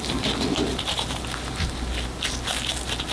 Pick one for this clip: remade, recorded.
recorded